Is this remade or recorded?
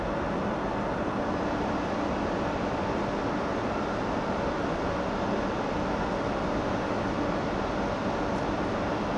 recorded